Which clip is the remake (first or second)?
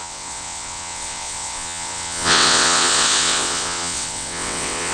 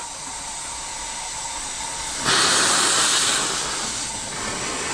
first